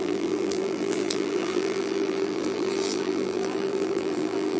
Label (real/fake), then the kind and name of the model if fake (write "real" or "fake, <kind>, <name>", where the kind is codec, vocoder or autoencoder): fake, vocoder, BigVGAN v2